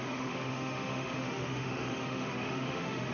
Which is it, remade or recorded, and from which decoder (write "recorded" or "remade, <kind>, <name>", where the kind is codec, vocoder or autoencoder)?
remade, autoencoder, DAC-VAE